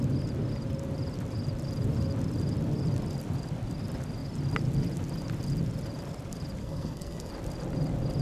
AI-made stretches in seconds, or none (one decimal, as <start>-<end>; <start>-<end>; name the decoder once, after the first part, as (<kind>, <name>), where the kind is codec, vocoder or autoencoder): 6.6-7.3 (codec, SNAC)